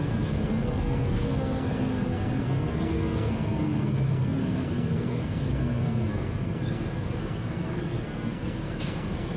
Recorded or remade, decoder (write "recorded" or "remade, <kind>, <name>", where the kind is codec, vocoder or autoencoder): remade, codec, SNAC